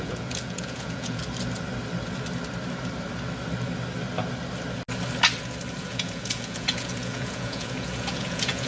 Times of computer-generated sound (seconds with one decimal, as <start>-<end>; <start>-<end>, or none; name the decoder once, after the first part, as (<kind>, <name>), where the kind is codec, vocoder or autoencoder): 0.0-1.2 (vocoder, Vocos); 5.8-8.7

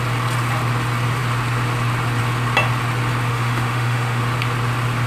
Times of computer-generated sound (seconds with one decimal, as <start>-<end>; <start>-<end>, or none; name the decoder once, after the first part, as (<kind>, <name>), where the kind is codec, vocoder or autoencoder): 3.3-4.2 (autoencoder, DAC-VAE)

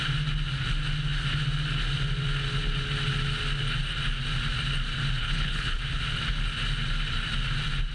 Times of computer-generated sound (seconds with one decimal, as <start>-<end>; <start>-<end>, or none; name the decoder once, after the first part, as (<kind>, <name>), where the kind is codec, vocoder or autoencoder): 5.2-5.8 (codec, HILCodec)